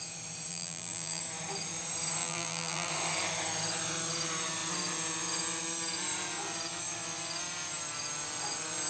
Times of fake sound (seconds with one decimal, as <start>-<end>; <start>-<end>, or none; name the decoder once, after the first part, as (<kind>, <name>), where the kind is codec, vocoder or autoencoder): 0.5-1.2 (vocoder, BigVGAN v2); 2.2-2.9